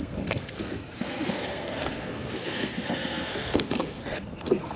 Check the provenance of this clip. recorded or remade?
remade